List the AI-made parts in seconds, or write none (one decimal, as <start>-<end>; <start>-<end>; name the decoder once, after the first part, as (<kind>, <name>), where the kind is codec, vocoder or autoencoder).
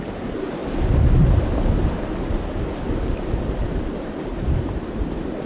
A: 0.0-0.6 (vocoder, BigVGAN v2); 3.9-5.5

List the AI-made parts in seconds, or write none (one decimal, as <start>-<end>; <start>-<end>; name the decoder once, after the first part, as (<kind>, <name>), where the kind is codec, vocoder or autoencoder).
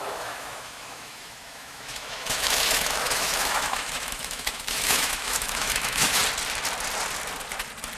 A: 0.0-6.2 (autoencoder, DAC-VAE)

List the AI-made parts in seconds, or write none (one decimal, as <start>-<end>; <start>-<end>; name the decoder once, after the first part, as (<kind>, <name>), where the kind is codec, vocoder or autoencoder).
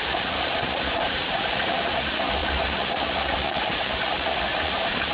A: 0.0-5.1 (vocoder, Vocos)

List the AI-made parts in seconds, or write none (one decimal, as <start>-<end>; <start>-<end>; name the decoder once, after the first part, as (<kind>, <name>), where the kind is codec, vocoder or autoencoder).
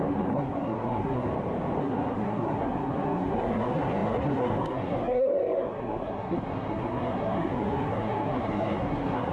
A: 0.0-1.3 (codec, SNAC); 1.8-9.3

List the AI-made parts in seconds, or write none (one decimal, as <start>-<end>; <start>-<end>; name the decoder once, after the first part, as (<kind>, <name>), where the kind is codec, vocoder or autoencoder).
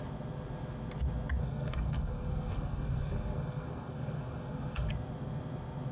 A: 1.4-4.9 (codec, SNAC)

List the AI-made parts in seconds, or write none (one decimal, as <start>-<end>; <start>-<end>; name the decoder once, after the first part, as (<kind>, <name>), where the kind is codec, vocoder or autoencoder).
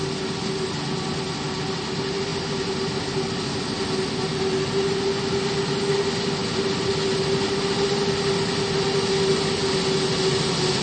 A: none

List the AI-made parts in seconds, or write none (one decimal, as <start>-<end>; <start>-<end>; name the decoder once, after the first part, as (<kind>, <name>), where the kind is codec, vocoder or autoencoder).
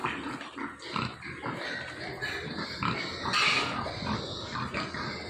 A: none